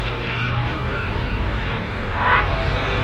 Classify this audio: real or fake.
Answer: fake